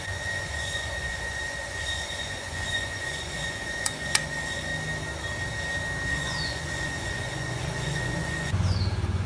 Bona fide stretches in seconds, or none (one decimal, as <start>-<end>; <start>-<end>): 4.7-6.1